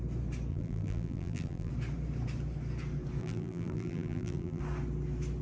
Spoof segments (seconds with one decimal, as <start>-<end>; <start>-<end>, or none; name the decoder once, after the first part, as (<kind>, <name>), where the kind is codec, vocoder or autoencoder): 0.5-1.7 (vocoder, BigVGAN v2); 3.2-4.6